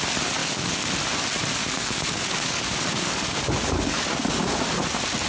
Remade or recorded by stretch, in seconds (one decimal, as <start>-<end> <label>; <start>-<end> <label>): 0.0-0.4 recorded; 0.4-0.9 remade; 0.9-1.6 recorded; 1.6-4.6 remade; 4.6-5.3 recorded